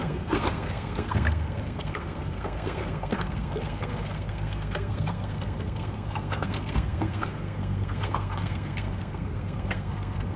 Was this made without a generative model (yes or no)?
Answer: no